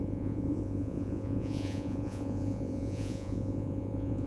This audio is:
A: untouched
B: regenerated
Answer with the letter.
B